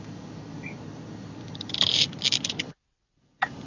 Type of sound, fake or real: fake